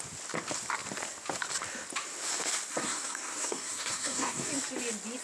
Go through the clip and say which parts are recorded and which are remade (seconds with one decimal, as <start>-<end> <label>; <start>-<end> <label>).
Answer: 0.0-2.7 recorded; 2.7-4.5 remade; 4.5-5.2 recorded